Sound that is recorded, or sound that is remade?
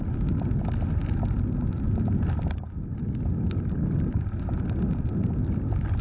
recorded